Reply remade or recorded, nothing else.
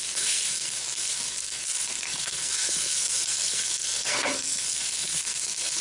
remade